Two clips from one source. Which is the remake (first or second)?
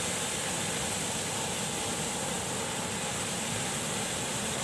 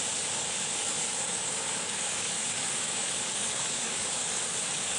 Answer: second